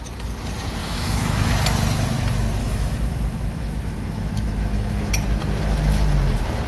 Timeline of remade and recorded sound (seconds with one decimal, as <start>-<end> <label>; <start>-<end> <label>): 0.0-0.8 recorded; 0.8-1.5 remade; 1.5-2.6 recorded; 2.6-5.1 remade; 5.1-6.7 recorded